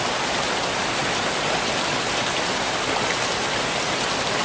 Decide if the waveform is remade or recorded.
recorded